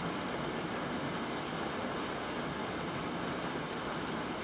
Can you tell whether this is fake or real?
real